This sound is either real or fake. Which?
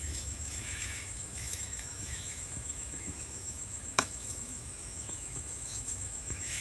fake